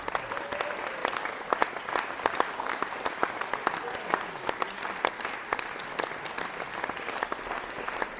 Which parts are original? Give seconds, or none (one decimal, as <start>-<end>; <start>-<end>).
0.0-8.2